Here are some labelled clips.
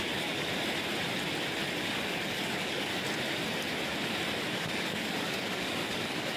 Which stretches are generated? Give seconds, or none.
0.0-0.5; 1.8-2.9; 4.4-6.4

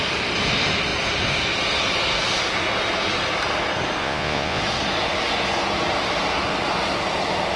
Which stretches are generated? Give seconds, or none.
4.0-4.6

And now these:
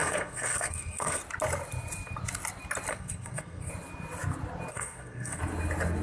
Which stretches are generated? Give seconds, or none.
0.0-1.2; 2.9-3.7; 4.7-5.4

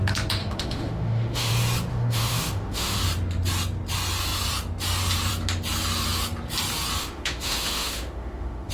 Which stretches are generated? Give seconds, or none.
0.4-1.5; 1.9-3.0; 7.0-8.7